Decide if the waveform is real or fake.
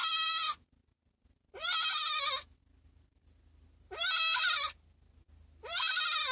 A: real